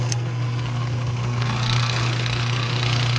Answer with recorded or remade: remade